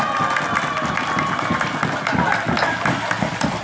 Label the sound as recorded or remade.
recorded